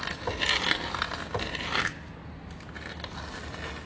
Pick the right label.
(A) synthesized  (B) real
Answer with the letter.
B